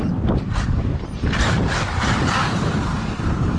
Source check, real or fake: fake